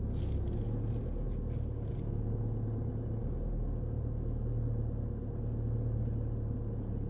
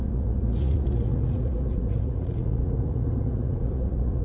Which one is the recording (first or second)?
first